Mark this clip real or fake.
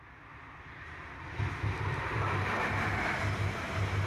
real